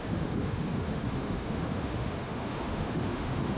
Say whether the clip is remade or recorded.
remade